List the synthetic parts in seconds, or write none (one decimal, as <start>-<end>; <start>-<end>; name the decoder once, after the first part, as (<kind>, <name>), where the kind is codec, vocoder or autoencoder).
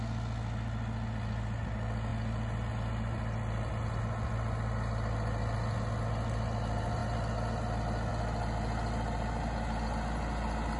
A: none